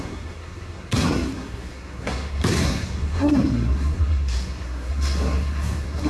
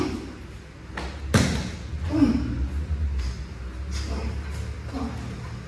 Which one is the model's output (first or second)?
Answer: first